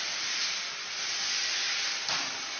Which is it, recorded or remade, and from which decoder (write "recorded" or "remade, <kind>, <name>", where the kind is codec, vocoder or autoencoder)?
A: recorded